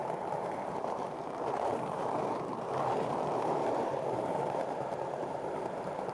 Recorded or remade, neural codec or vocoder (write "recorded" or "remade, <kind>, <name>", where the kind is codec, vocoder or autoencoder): remade, vocoder, BigVGAN v2